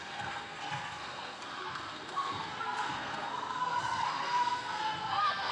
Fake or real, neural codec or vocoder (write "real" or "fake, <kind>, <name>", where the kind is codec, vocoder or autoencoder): fake, codec, SNAC